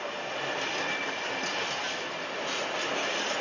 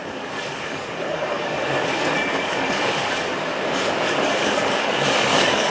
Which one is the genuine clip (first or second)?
first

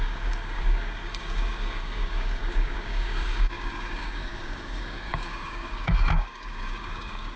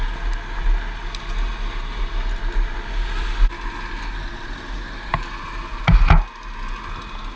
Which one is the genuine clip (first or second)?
second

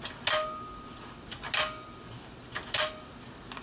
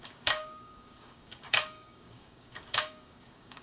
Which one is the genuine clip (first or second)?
first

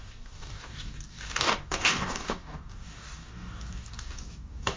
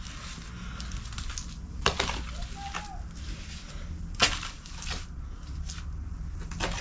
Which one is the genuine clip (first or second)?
second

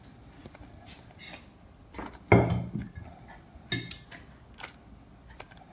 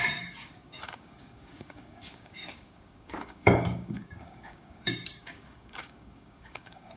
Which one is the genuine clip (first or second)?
first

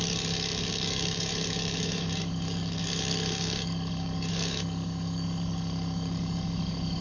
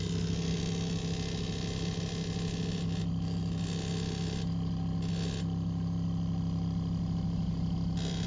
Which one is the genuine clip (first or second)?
second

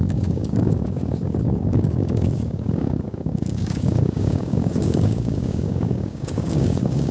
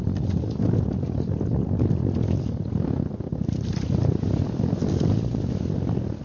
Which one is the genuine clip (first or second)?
second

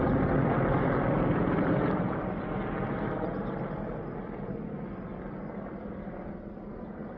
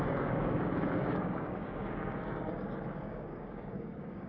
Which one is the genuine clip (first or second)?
first